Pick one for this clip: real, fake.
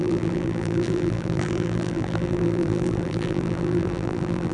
fake